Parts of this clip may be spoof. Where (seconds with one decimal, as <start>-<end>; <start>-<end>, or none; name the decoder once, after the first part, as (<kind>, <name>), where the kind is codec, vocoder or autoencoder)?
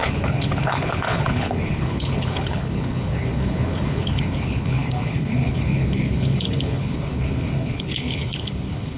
0.0-9.0 (codec, HILCodec)